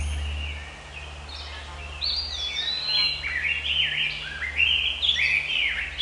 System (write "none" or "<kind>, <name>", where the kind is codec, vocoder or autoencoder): none